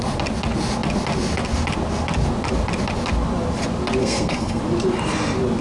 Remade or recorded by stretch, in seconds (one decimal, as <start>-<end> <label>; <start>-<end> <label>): 0.0-4.0 recorded; 4.0-4.6 remade; 4.6-5.6 recorded